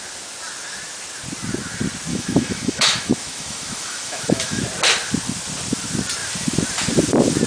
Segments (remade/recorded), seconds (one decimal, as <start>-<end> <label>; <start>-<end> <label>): 0.0-2.1 recorded; 2.1-4.6 remade; 4.6-7.5 recorded